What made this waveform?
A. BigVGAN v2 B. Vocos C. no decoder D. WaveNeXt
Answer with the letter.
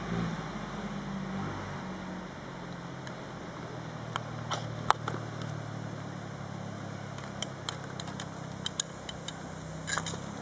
C